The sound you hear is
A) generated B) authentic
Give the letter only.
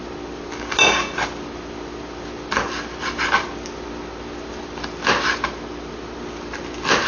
B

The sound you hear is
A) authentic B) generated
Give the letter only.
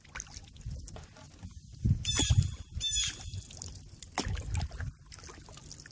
A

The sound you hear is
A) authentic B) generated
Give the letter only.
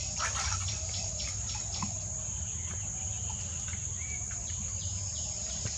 A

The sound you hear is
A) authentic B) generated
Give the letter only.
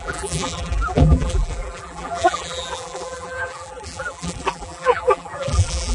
B